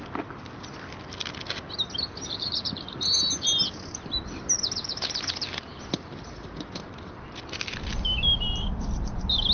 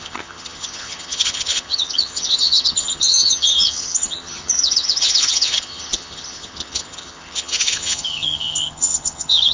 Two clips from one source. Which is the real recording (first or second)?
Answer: first